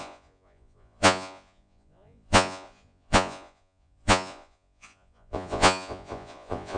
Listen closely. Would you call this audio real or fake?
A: fake